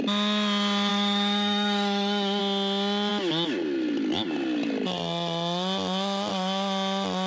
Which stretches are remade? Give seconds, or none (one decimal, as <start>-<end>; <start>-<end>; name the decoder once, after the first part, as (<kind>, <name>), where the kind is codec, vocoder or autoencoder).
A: 0.9-2.4 (autoencoder, DAC-VAE)